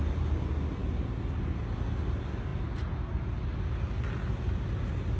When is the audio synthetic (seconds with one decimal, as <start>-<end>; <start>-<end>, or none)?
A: none